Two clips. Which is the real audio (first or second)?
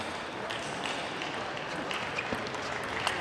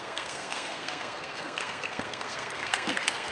first